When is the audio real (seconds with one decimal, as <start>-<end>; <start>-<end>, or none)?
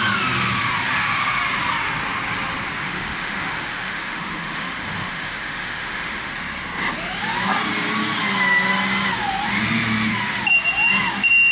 0.0-2.8; 6.3-11.5